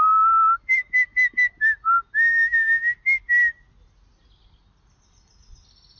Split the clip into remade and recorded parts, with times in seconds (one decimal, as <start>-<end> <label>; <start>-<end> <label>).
0.0-6.0 recorded